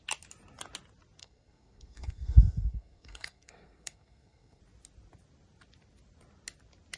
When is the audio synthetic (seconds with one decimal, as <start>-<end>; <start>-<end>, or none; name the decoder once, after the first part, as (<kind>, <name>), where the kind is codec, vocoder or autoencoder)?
1.2-4.6 (codec, SNAC)